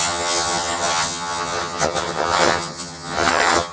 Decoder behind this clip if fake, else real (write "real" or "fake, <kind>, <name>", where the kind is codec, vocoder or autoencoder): fake, vocoder, HiFi-GAN